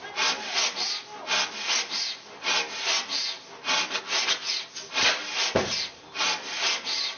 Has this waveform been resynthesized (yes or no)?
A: no